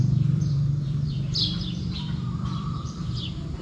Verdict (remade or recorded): remade